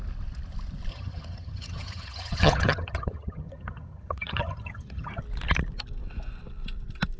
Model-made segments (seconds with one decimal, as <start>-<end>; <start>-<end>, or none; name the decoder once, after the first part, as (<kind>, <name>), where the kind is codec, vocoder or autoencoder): 0.9-5.2 (vocoder, HiFi-GAN)